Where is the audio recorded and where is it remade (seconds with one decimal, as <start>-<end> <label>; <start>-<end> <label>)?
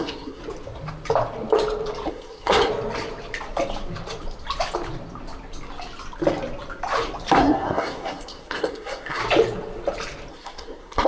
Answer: 0.0-0.4 remade; 0.4-2.1 recorded; 2.1-2.7 remade; 2.7-7.4 recorded; 7.4-9.2 remade; 9.2-10.3 recorded; 10.3-11.1 remade